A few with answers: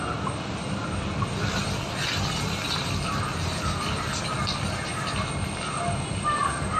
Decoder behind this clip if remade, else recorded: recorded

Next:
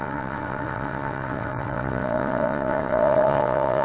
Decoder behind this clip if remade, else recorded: remade, vocoder, WaveNeXt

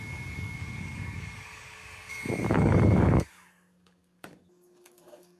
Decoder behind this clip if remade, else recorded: remade, codec, DAC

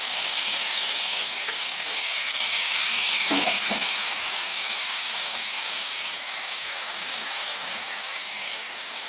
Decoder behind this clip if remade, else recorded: remade, codec, DAC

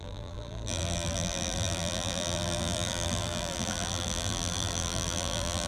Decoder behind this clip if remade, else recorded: remade, vocoder, BigVGAN v2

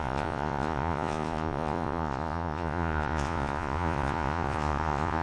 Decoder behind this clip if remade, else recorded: remade, vocoder, Vocos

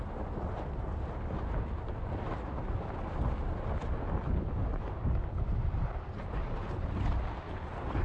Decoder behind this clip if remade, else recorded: recorded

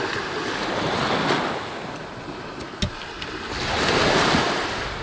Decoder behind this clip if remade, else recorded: recorded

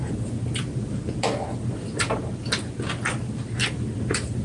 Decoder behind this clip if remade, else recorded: recorded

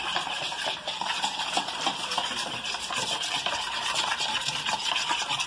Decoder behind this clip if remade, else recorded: remade, vocoder, BigVGAN v2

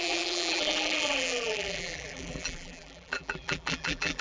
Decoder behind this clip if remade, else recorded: remade, vocoder, BigVGAN v2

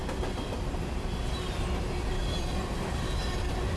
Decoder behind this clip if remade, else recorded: recorded